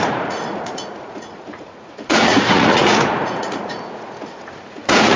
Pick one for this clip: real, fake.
fake